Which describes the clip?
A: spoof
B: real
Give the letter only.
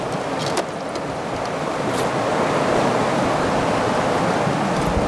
B